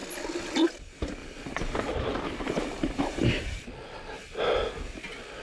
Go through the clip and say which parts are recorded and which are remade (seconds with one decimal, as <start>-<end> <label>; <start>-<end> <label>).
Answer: 0.0-0.7 remade; 0.7-1.2 recorded; 1.2-4.4 remade; 4.4-5.4 recorded